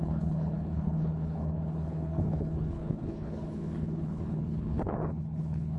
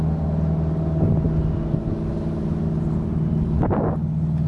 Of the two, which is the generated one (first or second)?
first